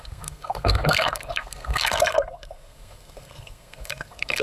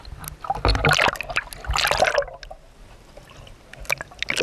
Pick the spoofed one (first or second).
first